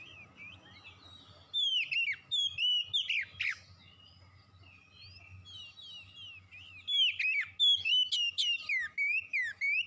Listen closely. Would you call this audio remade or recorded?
recorded